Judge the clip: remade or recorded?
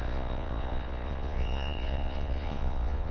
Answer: remade